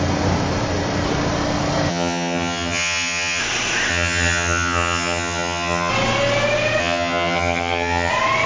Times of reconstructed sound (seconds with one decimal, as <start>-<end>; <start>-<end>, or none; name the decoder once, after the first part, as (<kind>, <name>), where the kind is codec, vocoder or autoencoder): 1.9-3.4 (vocoder, HiFi-GAN); 3.9-5.9; 6.8-8.1